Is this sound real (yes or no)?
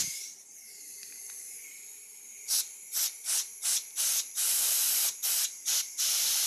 yes